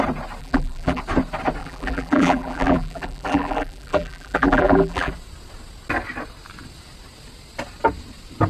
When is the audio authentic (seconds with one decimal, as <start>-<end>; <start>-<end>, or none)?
0.0-0.4; 1.0-1.6; 5.1-8.5